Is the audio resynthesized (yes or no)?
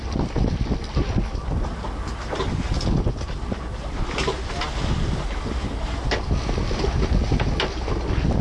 no